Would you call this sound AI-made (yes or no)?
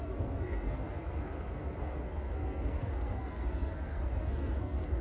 yes